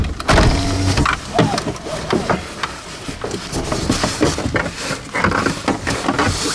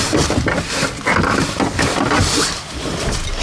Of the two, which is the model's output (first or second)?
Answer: second